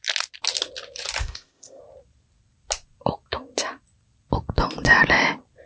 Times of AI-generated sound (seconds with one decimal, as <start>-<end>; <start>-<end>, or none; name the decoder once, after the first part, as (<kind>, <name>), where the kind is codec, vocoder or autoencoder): 1.2-1.8 (codec, ZipCodec)